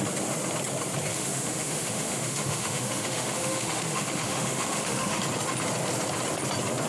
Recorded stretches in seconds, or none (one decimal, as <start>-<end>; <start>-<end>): 0.0-1.1; 5.2-6.9